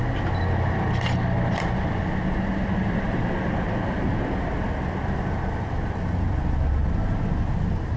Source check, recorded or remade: recorded